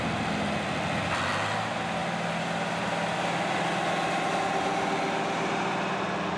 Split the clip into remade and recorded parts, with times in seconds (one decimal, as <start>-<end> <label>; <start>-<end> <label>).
0.0-6.4 recorded